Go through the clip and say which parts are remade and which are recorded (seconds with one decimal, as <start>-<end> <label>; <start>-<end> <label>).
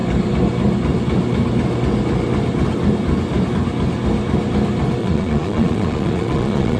0.0-5.0 recorded; 5.0-6.8 remade